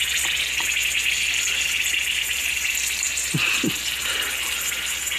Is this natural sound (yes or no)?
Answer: yes